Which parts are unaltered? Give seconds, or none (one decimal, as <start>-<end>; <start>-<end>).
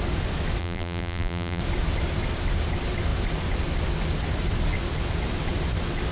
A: 0.0-0.6; 1.6-6.1